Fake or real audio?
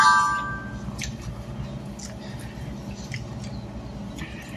real